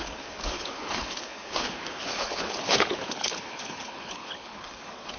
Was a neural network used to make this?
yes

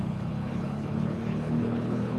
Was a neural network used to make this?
yes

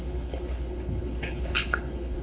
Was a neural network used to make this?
yes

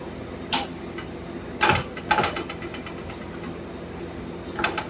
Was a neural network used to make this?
no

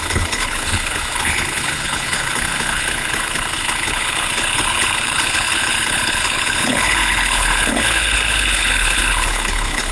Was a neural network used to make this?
yes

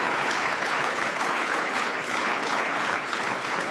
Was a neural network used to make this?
yes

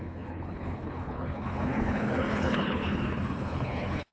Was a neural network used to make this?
yes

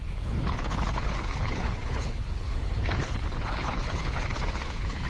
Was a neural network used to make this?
yes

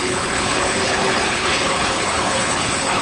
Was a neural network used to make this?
yes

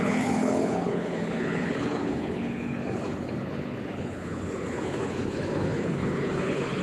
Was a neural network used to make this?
yes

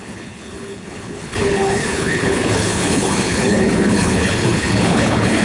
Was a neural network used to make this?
yes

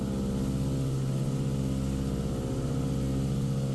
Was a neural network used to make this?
no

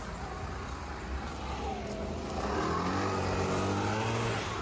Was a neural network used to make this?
no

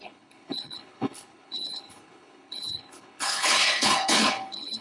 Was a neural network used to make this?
yes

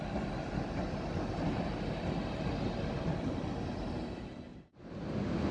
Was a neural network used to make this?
no